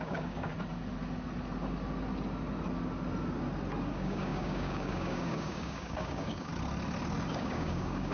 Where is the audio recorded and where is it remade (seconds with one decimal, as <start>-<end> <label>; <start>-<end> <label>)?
0.0-0.5 remade; 0.5-3.9 recorded; 3.9-6.5 remade; 6.5-7.3 recorded; 7.3-8.1 remade